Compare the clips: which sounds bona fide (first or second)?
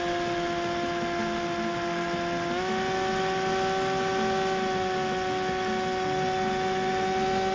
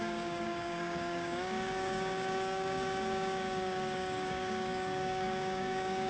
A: first